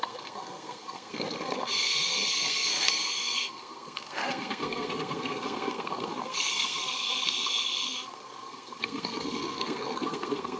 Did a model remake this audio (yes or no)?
yes